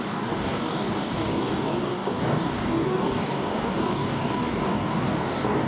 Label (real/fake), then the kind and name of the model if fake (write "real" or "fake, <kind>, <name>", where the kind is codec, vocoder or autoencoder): fake, codec, DAC